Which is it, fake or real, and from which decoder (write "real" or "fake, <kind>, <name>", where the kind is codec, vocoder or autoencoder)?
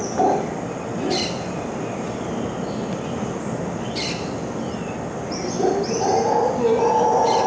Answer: real